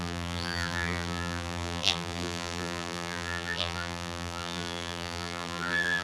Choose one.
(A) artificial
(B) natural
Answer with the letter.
A